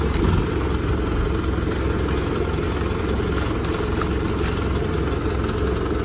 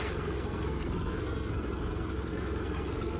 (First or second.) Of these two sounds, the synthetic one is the second